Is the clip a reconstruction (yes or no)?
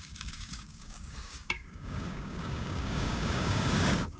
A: yes